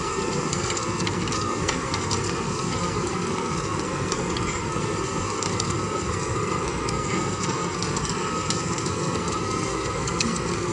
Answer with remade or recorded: remade